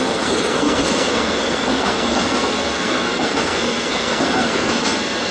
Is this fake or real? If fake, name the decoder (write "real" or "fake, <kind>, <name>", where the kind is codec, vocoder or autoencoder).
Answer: fake, codec, SNAC